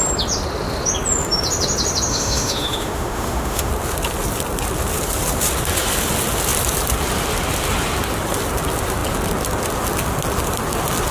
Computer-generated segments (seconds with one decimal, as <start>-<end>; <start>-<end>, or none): 2.1-3.7